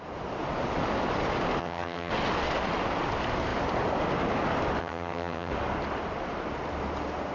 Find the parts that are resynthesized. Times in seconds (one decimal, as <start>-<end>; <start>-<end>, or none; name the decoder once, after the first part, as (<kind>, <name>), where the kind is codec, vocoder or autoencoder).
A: 1.6-2.1 (vocoder, HiFi-GAN); 4.8-5.5